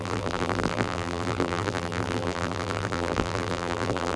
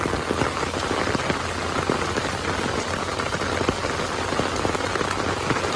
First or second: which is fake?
first